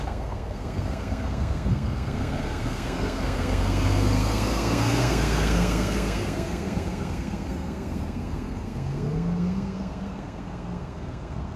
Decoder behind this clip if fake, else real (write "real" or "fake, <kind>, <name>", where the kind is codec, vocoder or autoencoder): fake, codec, SNAC